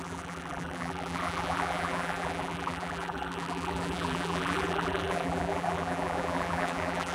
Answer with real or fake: fake